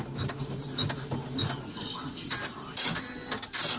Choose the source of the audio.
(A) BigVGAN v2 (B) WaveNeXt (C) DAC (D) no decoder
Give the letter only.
D